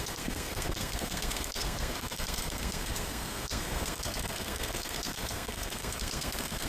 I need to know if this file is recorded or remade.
remade